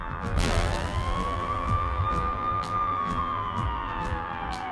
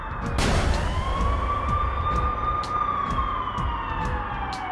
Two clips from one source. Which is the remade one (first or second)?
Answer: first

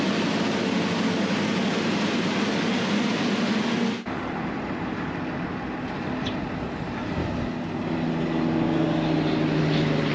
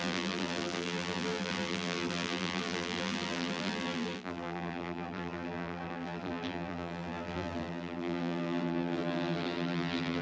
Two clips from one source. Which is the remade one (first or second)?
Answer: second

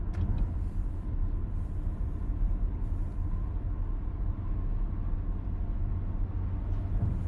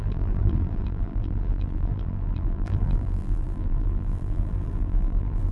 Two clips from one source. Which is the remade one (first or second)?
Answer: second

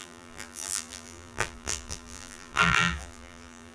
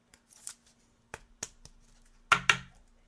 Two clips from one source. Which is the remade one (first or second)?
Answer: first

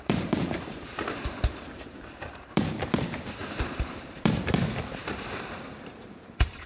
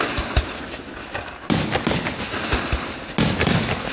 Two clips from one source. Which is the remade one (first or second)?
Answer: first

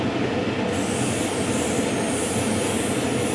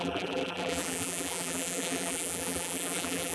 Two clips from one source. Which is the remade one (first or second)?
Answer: second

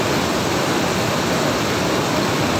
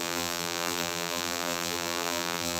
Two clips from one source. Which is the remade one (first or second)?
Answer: second